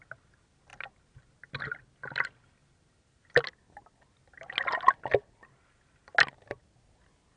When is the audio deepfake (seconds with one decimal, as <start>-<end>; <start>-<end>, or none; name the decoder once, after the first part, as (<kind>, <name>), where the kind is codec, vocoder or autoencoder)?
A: none